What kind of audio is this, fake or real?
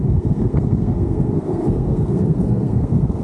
fake